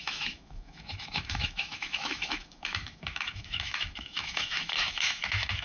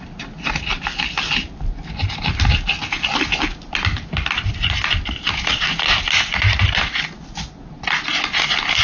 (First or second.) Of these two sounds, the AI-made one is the first